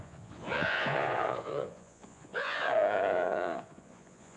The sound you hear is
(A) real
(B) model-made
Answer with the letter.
B